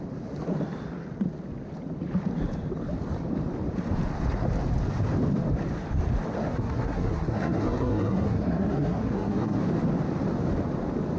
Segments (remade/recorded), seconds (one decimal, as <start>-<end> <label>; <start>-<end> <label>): 0.0-6.4 recorded; 6.4-9.6 remade; 9.6-11.2 recorded